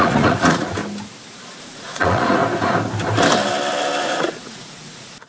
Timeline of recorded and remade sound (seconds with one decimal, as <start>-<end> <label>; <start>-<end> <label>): 0.0-0.8 remade; 0.8-1.6 recorded; 1.6-2.4 remade; 2.4-4.0 recorded; 4.0-5.3 remade